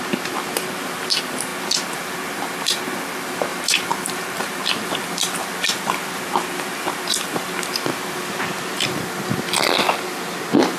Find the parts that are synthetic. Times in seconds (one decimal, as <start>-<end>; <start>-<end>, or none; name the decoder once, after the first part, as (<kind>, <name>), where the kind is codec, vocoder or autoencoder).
3.5-4.9 (vocoder, BigVGAN v2)